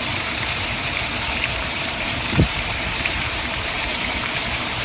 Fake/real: fake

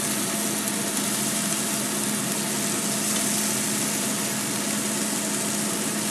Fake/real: real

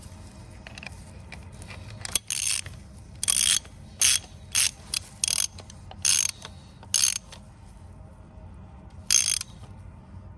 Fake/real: real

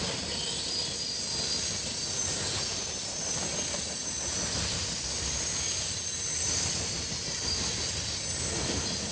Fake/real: real